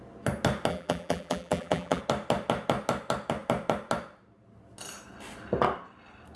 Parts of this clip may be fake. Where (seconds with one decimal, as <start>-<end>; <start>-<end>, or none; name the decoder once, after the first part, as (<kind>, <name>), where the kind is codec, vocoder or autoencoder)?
0.7-2.0 (vocoder, BigVGAN v2)